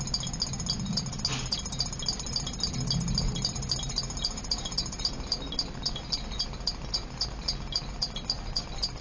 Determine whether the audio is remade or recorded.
recorded